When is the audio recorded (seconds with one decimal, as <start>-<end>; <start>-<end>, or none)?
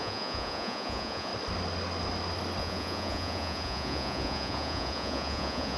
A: 1.3-2.6